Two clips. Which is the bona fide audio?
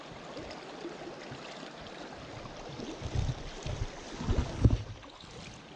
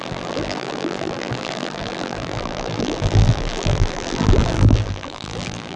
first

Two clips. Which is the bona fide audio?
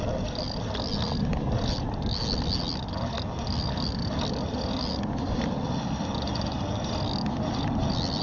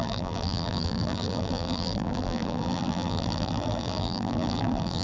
first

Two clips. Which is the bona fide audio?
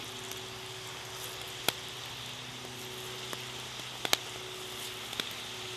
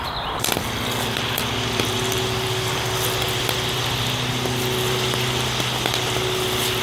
first